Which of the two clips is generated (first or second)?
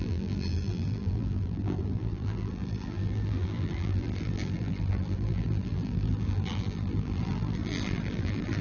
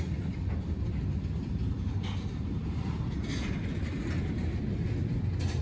first